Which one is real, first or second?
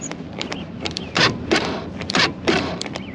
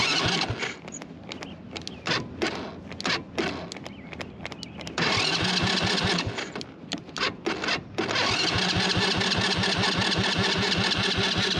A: second